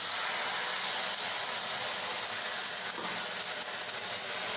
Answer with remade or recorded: recorded